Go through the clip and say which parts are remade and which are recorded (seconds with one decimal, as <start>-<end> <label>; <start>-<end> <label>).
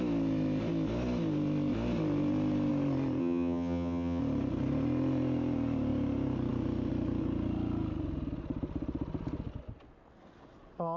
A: 0.0-3.2 recorded; 3.2-4.2 remade; 4.2-11.0 recorded